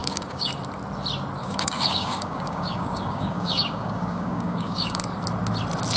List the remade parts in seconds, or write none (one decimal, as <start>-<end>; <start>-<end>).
0.0-0.5; 1.4-5.0